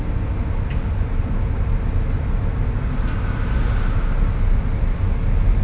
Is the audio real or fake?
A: real